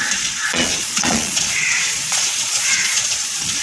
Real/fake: fake